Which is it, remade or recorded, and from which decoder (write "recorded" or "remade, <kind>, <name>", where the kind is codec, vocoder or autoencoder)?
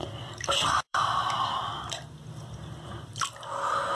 remade, vocoder, BigVGAN v2